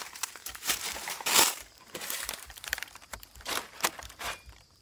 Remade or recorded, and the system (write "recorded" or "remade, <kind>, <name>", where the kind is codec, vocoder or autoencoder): remade, vocoder, BigVGAN v2